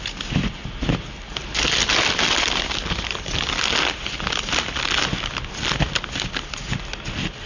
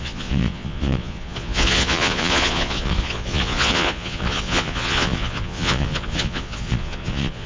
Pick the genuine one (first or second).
first